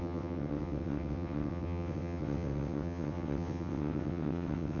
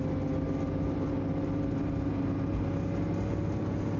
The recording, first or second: second